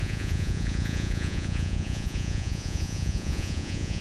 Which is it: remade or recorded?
remade